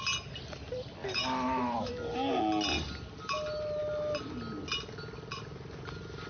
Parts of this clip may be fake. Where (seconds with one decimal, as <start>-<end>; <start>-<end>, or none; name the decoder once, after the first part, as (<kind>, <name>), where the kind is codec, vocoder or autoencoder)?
1.0-1.9 (autoencoder, DAC-VAE)